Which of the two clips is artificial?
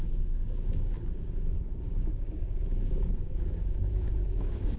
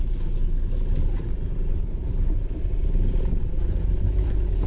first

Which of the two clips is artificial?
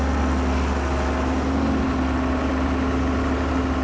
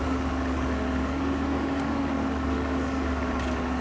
second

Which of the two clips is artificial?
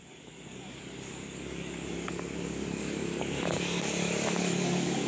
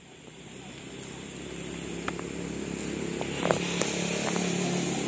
first